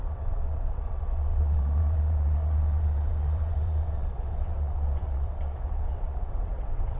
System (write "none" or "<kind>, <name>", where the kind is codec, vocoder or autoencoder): vocoder, WaveNeXt